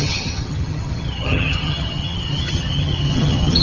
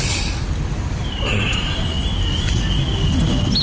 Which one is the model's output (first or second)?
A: first